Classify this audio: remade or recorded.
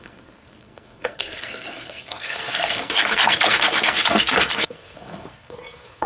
remade